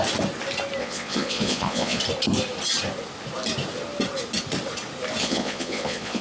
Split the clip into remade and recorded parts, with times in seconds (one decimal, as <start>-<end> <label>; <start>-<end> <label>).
0.0-0.8 recorded; 0.8-2.0 remade; 2.0-5.2 recorded; 5.2-6.2 remade